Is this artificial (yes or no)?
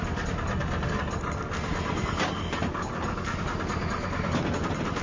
no